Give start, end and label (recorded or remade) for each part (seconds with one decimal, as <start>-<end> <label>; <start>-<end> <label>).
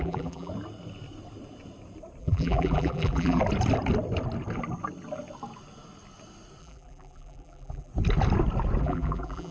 0.0-0.5 remade; 0.5-2.2 recorded; 2.2-3.4 remade; 3.4-6.6 recorded; 6.6-7.9 remade; 7.9-8.8 recorded; 8.8-9.5 remade